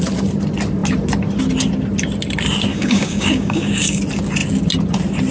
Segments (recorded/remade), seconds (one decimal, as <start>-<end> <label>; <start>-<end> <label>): 0.0-2.7 recorded; 2.7-4.0 remade; 4.0-5.3 recorded